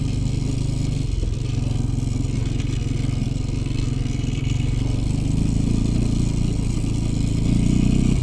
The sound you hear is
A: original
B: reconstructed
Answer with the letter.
A